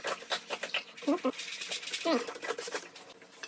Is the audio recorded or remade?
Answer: recorded